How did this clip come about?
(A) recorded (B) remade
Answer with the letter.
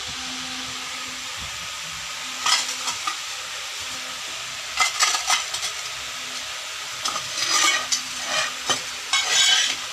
B